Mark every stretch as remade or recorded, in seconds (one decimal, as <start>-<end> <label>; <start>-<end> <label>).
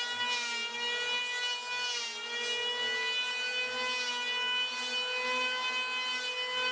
0.0-6.7 recorded